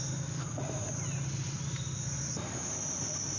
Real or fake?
real